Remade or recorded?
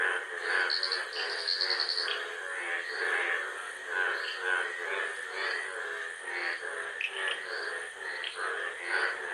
recorded